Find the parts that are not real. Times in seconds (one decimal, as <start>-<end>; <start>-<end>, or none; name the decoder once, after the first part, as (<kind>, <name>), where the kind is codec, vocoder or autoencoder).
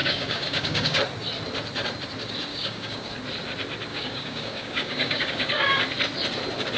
0.0-1.0 (codec, DAC); 2.5-3.1; 3.9-5.8